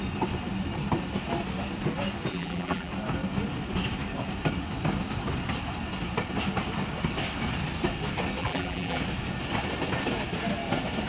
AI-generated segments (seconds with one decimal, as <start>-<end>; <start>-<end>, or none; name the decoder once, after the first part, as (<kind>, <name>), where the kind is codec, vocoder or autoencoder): 2.3-2.9 (vocoder, BigVGAN v2); 8.4-9.0